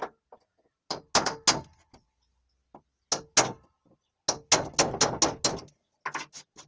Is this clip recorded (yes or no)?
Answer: yes